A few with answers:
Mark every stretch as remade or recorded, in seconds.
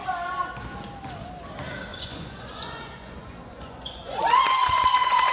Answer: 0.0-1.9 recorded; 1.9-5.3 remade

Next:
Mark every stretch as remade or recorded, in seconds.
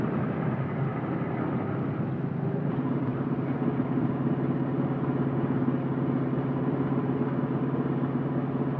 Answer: 0.0-8.8 recorded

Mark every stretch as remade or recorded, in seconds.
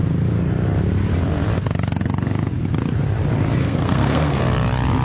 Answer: 0.0-3.6 recorded; 3.6-4.4 remade; 4.4-5.0 recorded